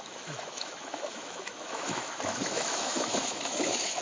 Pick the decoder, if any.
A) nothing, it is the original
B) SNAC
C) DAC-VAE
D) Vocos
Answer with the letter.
C